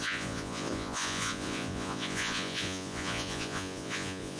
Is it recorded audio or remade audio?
remade